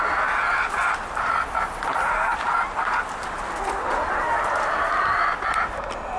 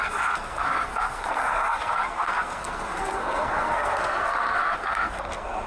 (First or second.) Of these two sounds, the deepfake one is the second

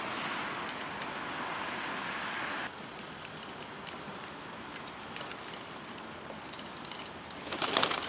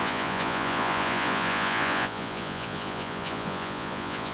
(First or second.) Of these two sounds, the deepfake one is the second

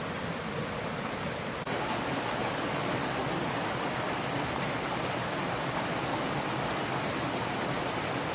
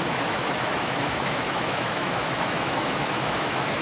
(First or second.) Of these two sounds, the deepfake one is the second